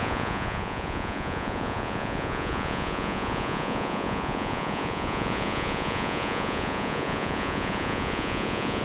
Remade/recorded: remade